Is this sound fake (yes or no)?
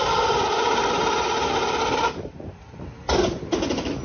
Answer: no